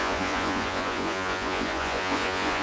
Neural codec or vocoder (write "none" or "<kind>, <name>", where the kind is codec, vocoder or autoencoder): vocoder, Vocos